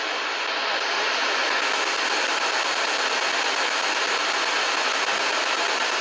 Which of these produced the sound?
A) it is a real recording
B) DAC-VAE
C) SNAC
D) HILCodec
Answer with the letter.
A